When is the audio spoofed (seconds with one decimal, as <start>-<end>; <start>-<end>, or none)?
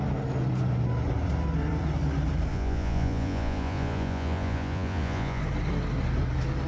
2.5-5.4